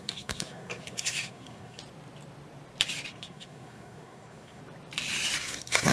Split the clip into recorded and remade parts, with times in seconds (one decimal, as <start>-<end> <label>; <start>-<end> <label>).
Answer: 0.0-1.8 remade; 1.8-3.1 recorded; 3.1-4.6 remade; 4.6-5.4 recorded; 5.4-5.9 remade